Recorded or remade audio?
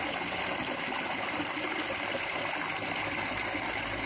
recorded